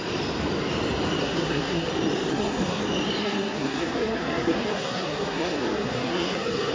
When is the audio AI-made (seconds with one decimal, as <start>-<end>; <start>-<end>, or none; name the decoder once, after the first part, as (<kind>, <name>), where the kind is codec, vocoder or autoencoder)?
1.2-1.9 (codec, SNAC); 2.3-2.8; 3.2-6.7